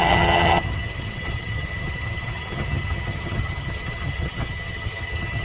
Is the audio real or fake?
fake